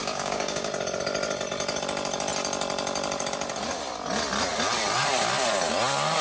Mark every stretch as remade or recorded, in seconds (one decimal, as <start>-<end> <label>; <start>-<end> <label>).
0.0-0.7 remade; 0.7-6.2 recorded